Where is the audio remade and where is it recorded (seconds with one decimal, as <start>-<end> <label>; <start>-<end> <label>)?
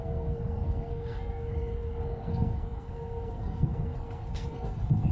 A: 0.0-5.1 remade